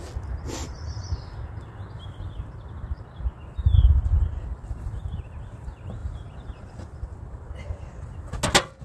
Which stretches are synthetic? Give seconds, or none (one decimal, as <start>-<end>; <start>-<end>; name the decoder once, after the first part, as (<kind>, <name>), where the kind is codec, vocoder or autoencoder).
6.0-6.7 (vocoder, BigVGAN v2)